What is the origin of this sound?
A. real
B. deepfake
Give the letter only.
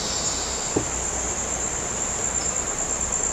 A